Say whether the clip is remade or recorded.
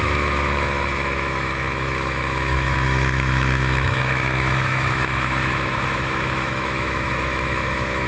remade